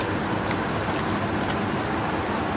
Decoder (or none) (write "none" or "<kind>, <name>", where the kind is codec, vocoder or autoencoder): none